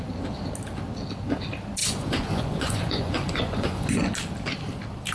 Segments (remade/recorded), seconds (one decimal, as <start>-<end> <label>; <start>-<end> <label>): 0.0-1.8 recorded; 1.8-3.9 remade; 3.9-5.1 recorded